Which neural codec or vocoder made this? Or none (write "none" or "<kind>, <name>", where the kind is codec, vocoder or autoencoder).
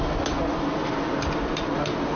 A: none